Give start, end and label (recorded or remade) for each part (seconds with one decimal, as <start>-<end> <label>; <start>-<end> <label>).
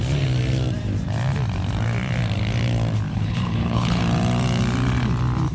0.0-3.1 recorded; 3.1-4.0 remade; 4.0-5.5 recorded